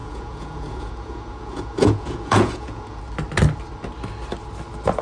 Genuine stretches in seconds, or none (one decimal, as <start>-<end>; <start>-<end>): 3.0-5.0